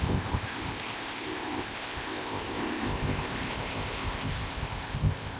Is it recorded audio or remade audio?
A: remade